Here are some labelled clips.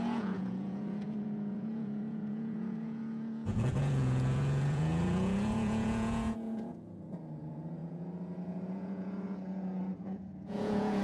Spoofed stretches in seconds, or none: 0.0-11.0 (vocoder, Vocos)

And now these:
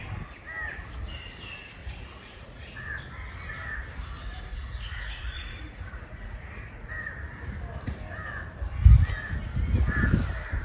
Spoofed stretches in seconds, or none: 1.8-2.9 (vocoder, Vocos); 4.5-6.9

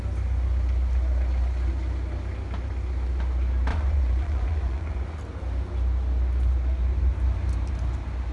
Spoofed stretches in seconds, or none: 3.7-5.2 (vocoder, Vocos)